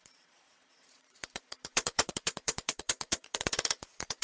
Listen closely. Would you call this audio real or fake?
fake